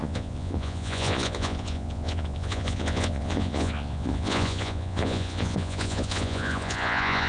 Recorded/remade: remade